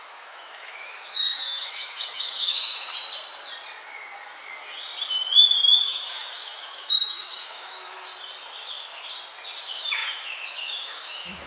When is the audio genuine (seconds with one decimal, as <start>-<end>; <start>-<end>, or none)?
2.9-5.8; 8.1-9.6

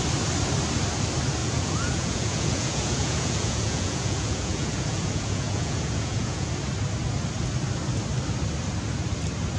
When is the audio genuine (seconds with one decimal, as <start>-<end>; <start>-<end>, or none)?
0.0-1.4; 6.5-9.6

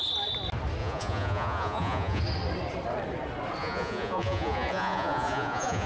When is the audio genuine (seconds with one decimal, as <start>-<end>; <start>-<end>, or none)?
0.0-0.8; 2.2-3.6

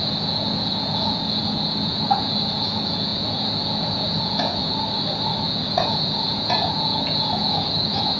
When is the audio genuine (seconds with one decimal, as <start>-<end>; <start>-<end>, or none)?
4.6-5.4